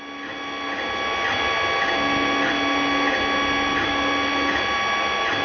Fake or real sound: real